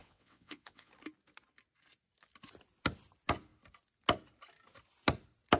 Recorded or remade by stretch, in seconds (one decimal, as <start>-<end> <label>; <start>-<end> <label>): 0.0-0.9 remade; 0.9-5.6 recorded